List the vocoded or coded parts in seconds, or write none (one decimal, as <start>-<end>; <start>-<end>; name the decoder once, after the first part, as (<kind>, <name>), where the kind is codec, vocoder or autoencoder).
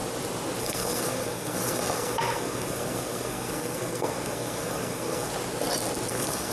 0.6-5.3 (codec, SNAC); 6.1-6.5